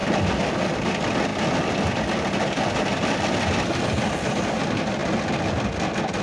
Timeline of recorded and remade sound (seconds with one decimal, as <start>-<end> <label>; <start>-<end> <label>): 0.0-6.2 recorded

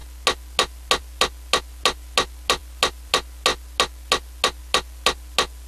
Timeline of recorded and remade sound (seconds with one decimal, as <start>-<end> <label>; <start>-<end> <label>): 0.0-5.7 recorded